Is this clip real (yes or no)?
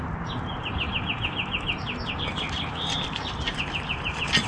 yes